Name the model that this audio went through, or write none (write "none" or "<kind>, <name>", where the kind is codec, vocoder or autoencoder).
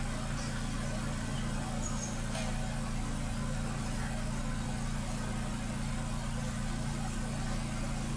none